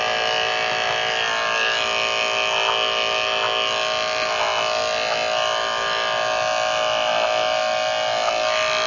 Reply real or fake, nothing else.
real